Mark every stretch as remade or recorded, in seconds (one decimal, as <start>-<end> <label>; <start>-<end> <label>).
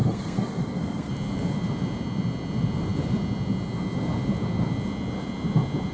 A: 0.0-1.1 remade; 1.1-5.9 recorded